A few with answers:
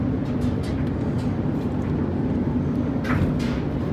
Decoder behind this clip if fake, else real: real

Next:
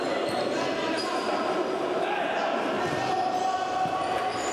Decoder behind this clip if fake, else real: real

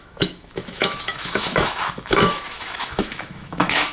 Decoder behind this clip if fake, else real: fake, autoencoder, DAC-VAE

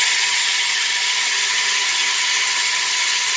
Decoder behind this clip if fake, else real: fake, vocoder, HiFi-GAN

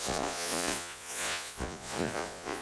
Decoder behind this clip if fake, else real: fake, vocoder, Vocos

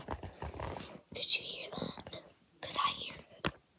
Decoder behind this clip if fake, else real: real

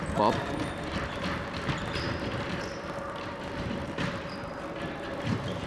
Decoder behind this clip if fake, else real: fake, vocoder, BigVGAN v2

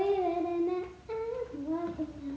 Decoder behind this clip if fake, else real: real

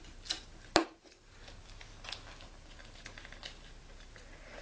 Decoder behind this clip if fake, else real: real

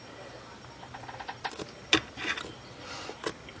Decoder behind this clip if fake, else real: real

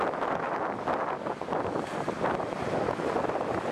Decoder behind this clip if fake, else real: real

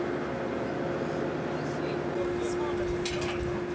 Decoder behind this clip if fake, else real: real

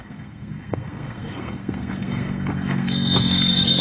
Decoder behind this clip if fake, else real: fake, codec, SNAC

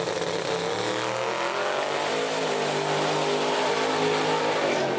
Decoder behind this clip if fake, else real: real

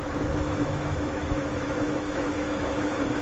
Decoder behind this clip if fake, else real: fake, autoencoder, DAC-VAE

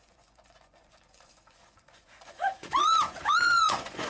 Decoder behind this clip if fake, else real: fake, vocoder, Vocos